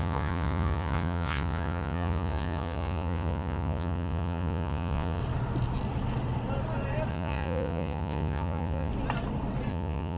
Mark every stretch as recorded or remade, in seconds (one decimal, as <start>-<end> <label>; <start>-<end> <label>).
0.0-5.2 remade; 5.2-7.1 recorded; 7.1-8.9 remade; 8.9-9.7 recorded; 9.7-10.2 remade